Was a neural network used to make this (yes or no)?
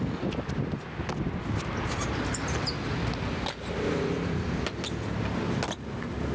no